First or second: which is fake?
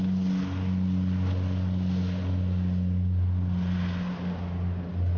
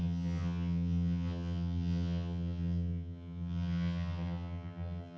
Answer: second